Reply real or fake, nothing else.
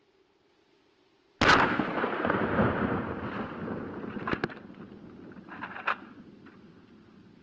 real